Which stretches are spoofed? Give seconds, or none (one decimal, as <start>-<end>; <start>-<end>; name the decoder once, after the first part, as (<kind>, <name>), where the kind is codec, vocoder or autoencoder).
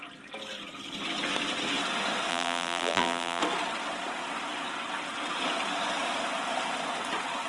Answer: 2.3-3.4 (vocoder, BigVGAN v2)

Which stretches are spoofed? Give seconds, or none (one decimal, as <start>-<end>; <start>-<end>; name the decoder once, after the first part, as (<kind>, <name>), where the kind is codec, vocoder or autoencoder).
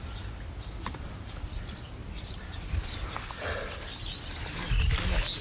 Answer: 2.0-2.5 (vocoder, BigVGAN v2)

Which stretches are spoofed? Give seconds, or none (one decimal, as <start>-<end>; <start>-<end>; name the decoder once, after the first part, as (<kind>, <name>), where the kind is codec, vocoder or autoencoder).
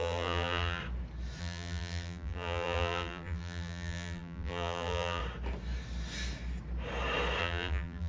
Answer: 0.0-0.8 (vocoder, BigVGAN v2); 1.4-5.2; 7.4-8.1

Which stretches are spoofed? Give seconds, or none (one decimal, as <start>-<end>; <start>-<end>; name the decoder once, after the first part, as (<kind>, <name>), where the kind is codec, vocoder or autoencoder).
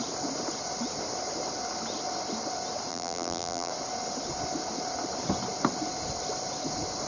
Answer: 2.9-3.7 (vocoder, BigVGAN v2)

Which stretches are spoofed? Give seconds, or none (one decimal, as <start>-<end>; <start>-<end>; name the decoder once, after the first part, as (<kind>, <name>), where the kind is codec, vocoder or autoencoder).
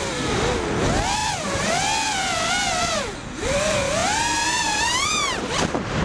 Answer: 4.0-5.1 (vocoder, BigVGAN v2)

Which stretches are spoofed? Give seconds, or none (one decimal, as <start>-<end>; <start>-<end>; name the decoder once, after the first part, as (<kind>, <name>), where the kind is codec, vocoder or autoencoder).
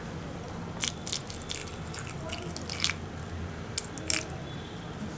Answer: none